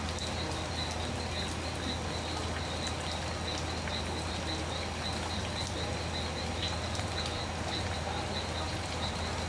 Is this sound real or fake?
real